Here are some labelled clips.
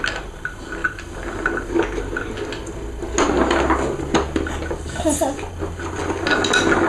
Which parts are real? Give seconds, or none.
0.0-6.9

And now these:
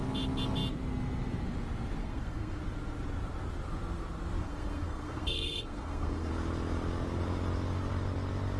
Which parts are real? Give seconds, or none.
0.0-2.0; 2.6-4.4; 6.3-8.6

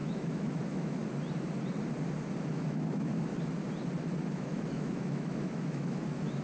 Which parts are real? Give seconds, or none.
1.0-2.5; 3.3-4.3

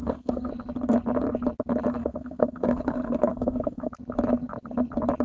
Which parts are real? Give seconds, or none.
0.5-2.0; 3.9-5.2

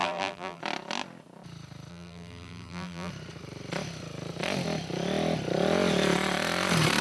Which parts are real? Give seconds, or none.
0.6-1.9; 3.1-7.0

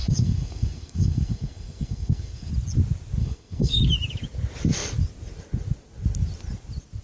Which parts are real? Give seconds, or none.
2.5-3.2; 3.8-7.0